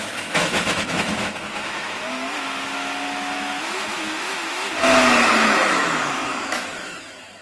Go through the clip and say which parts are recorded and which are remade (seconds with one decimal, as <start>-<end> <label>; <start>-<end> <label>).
0.0-4.7 remade; 4.7-5.3 recorded; 5.3-7.4 remade